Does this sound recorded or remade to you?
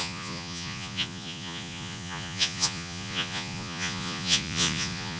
remade